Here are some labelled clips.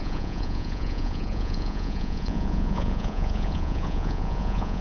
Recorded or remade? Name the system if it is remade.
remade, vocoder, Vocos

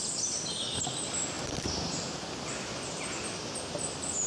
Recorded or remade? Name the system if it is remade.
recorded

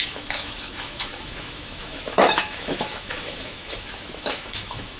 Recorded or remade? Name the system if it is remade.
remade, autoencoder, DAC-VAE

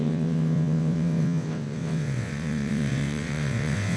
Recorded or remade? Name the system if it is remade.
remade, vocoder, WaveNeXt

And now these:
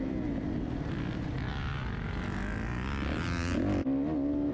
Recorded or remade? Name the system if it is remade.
recorded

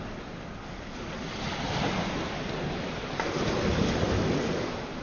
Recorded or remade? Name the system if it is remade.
recorded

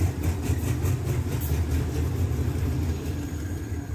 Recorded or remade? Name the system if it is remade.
recorded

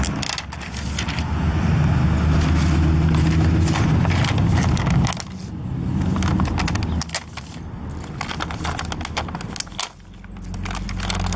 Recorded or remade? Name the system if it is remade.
recorded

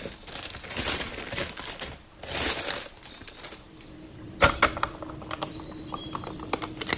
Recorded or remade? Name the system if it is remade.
remade, vocoder, BigVGAN v2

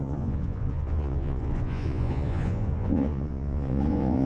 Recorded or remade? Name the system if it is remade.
remade, vocoder, Vocos